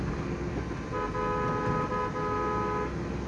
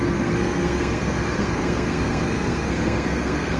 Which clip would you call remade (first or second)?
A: second